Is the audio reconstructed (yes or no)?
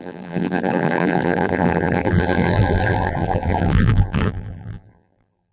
yes